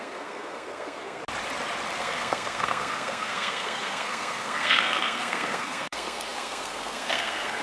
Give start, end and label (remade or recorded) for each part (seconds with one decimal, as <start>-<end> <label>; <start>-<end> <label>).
0.0-1.2 remade; 1.2-2.0 recorded; 2.0-7.6 remade